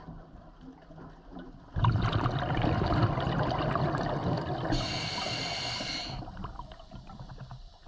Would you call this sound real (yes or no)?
yes